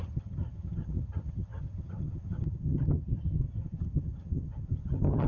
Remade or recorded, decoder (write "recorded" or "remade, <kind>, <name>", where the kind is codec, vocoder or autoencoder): remade, vocoder, HiFi-GAN